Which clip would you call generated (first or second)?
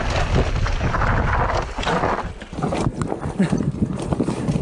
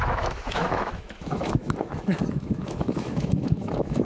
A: second